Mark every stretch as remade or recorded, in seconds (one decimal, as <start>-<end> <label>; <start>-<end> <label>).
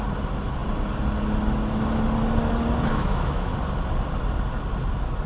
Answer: 0.0-2.9 recorded; 2.9-3.5 remade; 3.5-5.3 recorded